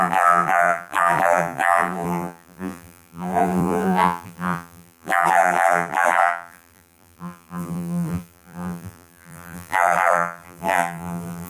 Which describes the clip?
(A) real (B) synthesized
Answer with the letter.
B